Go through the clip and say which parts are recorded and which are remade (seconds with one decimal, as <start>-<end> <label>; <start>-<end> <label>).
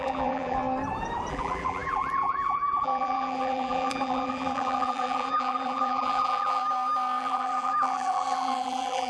0.0-0.6 remade; 0.6-1.3 recorded; 1.3-6.6 remade; 6.6-7.2 recorded; 7.2-9.1 remade